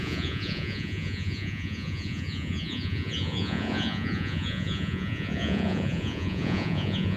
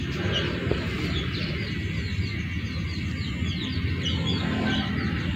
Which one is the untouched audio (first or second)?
second